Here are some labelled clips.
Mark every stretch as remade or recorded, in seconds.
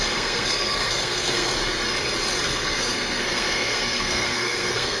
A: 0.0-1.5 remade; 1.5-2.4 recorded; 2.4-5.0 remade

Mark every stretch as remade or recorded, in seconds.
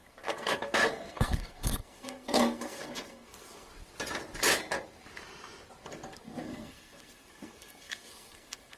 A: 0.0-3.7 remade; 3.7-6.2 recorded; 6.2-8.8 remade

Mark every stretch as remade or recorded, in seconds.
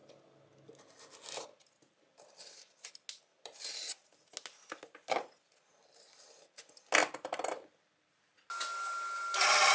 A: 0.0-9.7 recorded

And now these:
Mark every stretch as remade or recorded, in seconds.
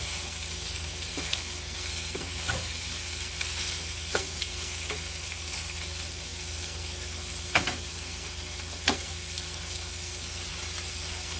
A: 0.0-10.4 remade; 10.4-10.9 recorded; 10.9-11.4 remade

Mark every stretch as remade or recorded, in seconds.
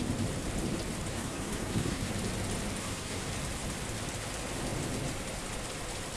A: 0.0-1.1 recorded; 1.1-2.1 remade; 2.1-2.8 recorded; 2.8-3.3 remade; 3.3-6.2 recorded